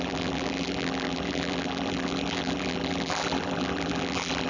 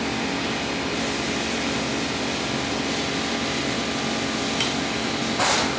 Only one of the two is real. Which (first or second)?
second